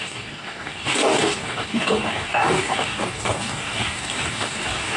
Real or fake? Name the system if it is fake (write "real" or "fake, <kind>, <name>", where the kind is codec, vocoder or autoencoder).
fake, codec, DAC